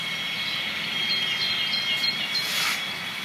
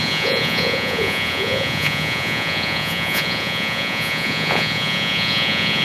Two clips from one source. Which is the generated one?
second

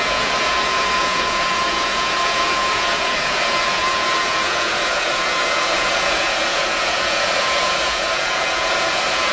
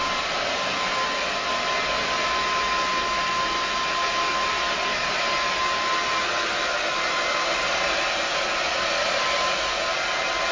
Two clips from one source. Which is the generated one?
first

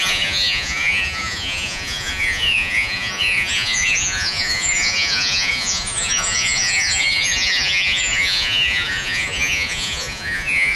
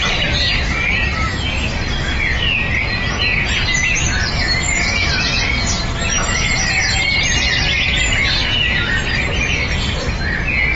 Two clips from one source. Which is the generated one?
first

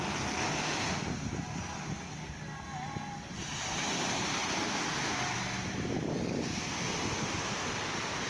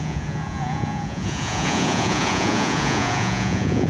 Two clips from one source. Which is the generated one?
second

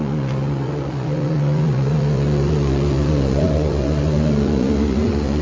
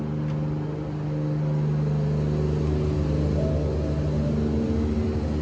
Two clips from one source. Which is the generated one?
first